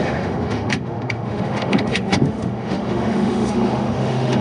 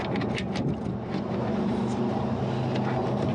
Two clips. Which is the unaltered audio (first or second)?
second